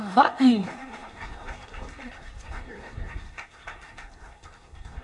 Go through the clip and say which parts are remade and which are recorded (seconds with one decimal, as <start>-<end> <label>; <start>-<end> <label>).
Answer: 0.0-5.0 remade